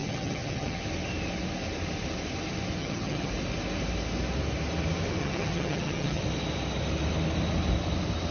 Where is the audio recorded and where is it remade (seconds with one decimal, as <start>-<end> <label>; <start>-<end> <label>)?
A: 0.0-0.8 remade; 0.8-2.8 recorded; 2.8-3.3 remade; 3.3-5.2 recorded; 5.2-6.2 remade; 6.2-8.3 recorded